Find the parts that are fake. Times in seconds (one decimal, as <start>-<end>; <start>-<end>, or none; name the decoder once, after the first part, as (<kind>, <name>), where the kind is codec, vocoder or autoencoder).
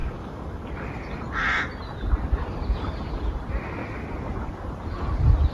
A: 0.0-0.6 (autoencoder, DAC-VAE)